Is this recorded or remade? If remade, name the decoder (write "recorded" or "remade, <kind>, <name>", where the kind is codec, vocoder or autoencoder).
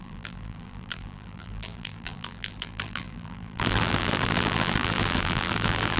remade, vocoder, BigVGAN v2